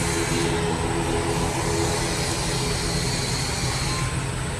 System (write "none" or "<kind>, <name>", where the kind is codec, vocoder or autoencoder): none